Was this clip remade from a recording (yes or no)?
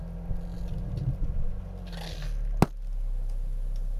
no